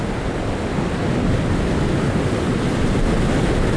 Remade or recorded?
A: recorded